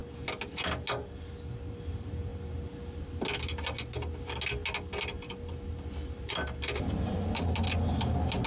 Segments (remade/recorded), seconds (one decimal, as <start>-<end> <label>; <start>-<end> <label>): 0.0-8.5 recorded